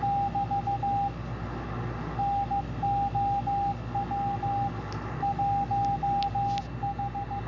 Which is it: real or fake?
real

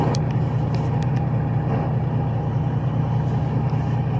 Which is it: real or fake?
real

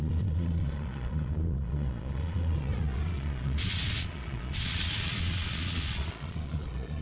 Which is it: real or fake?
fake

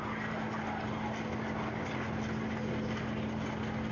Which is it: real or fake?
real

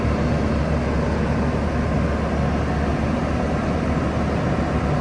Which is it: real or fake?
real